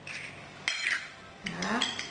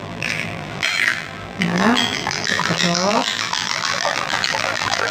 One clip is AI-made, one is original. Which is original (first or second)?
first